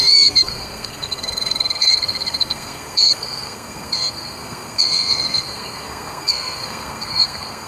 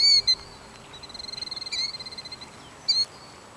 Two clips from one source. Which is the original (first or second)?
second